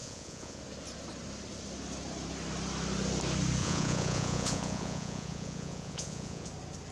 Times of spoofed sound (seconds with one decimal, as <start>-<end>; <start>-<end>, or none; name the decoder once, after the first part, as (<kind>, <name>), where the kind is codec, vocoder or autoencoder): 0.0-0.6 (vocoder, Vocos); 3.6-6.5